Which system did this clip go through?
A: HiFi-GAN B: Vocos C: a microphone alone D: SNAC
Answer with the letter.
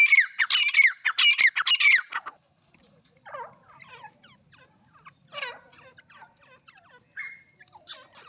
C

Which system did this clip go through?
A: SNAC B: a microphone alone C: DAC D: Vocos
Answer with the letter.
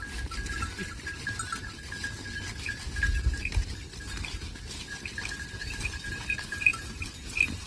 B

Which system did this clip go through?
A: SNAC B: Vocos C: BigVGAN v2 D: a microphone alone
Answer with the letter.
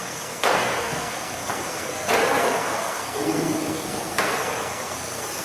A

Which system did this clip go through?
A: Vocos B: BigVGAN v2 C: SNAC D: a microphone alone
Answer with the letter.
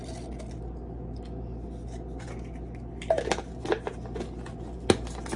D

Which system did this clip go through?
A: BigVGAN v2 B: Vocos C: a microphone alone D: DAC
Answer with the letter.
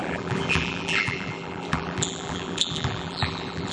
A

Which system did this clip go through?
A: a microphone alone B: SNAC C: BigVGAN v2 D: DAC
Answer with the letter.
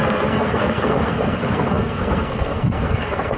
B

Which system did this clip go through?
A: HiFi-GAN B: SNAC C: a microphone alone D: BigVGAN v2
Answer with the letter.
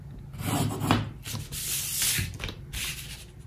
C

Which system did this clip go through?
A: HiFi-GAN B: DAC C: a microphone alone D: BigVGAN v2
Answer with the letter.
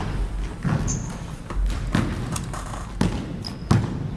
C